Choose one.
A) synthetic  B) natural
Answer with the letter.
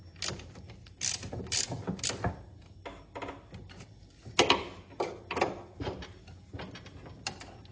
B